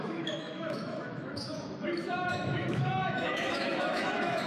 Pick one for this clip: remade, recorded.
remade